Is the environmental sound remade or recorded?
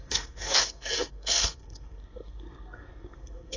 remade